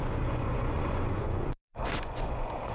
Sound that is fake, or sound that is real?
fake